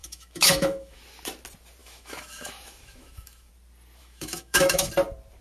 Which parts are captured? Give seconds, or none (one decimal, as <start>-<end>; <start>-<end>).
1.0-1.8; 3.5-4.0; 4.9-5.4